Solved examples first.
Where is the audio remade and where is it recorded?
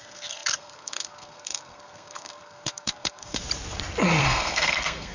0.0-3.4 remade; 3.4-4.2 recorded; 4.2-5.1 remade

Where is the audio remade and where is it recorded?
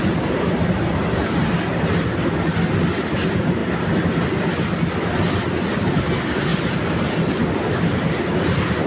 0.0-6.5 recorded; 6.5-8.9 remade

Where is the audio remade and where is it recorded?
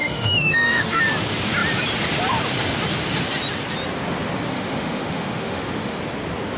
0.0-1.0 remade; 1.0-4.5 recorded; 4.5-6.0 remade; 6.0-6.6 recorded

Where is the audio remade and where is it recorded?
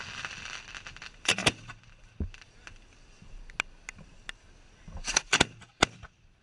0.0-6.4 recorded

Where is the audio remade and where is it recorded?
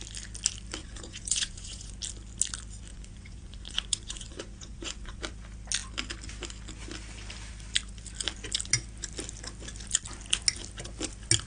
0.0-0.8 recorded; 0.8-2.0 remade; 2.0-2.9 recorded; 2.9-5.2 remade; 5.2-11.5 recorded